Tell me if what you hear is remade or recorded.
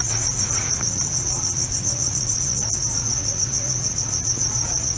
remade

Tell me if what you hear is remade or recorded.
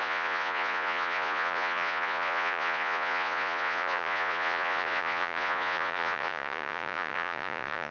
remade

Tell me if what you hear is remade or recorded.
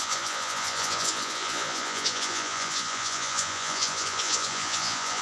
remade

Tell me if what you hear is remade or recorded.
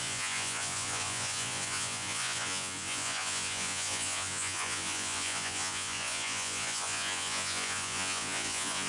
remade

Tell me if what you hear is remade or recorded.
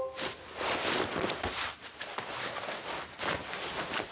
recorded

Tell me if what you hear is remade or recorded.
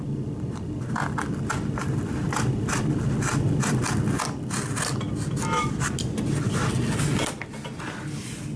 recorded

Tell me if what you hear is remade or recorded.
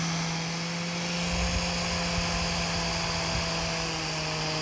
recorded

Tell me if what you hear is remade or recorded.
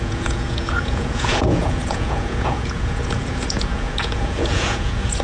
remade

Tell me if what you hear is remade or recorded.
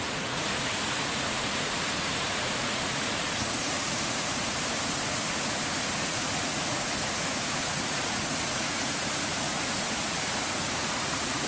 remade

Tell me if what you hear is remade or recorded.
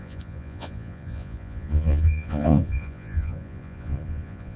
remade